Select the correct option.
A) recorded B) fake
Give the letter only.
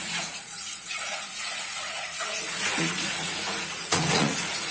B